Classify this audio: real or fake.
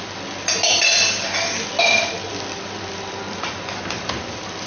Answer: real